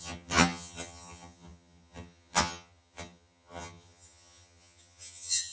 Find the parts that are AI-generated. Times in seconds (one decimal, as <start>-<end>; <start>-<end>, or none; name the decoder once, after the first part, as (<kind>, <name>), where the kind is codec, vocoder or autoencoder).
0.0-5.5 (vocoder, HiFi-GAN)